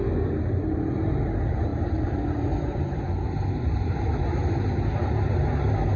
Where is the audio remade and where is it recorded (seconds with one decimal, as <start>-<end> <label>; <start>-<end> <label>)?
0.0-1.7 recorded; 1.7-4.0 remade; 4.0-6.0 recorded